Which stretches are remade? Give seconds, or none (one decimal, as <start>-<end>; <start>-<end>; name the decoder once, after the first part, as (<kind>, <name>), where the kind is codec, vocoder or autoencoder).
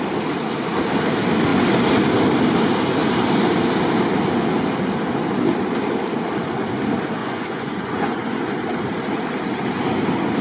7.2-8.5 (vocoder, Vocos)